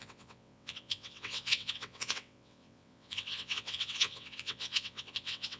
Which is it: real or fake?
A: fake